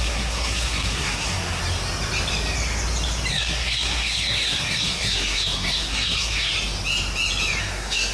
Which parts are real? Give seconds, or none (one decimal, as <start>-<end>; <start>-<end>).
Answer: 1.6-3.3; 6.5-7.6